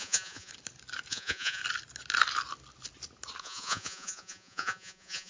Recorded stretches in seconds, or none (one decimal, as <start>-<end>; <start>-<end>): 0.5-1.1; 1.6-3.4